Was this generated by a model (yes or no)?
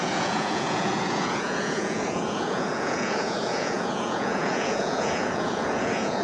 yes